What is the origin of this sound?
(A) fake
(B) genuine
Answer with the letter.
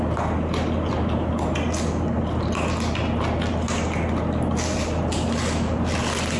B